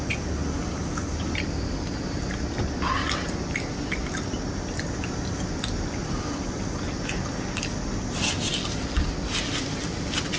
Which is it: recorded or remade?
recorded